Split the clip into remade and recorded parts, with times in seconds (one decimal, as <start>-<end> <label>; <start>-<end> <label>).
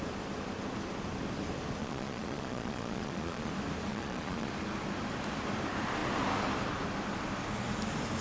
0.0-1.8 recorded; 1.8-3.5 remade; 3.5-3.9 recorded; 3.9-4.5 remade; 4.5-8.2 recorded